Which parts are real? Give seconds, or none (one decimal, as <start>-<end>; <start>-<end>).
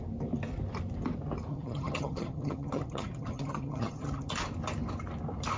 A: 0.0-1.5; 4.3-5.6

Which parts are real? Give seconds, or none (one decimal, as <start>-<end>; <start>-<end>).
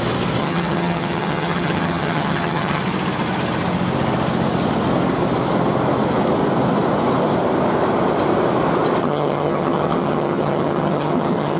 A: 0.0-0.4; 2.8-9.0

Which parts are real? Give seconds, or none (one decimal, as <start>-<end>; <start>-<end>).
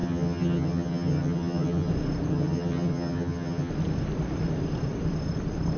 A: 1.9-2.3; 3.7-5.8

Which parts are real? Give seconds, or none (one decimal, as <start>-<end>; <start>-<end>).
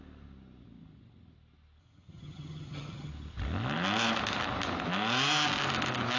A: 0.0-1.8; 3.1-6.2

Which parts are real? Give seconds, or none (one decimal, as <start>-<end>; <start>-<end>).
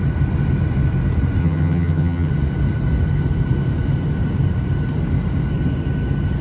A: 0.0-1.4; 2.3-6.4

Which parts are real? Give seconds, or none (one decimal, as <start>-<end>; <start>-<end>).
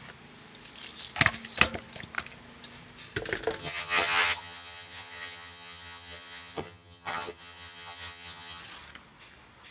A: 0.0-3.6; 8.6-9.7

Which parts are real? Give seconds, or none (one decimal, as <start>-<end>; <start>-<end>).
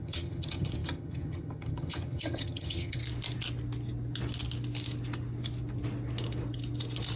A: 3.0-7.2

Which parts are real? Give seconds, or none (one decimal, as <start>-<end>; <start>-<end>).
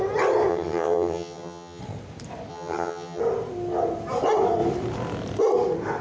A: 0.0-0.5; 1.8-2.5; 3.2-6.0